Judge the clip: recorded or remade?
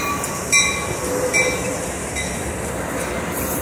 recorded